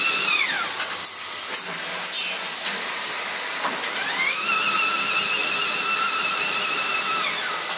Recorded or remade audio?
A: recorded